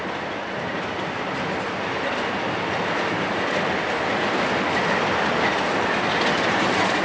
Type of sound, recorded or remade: recorded